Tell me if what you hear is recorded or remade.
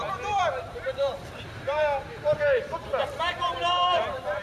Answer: remade